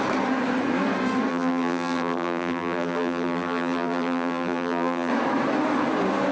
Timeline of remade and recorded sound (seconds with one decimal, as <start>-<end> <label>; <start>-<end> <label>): 0.0-1.3 recorded; 1.3-5.1 remade; 5.1-6.3 recorded